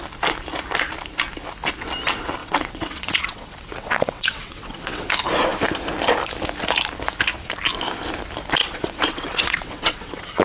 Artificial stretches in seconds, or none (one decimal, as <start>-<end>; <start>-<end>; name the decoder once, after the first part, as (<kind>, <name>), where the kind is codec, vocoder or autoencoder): 2.4-5.1 (vocoder, WaveNeXt); 8.6-10.4